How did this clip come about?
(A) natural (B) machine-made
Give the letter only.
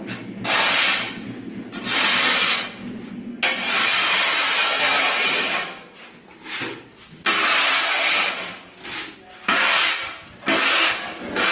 A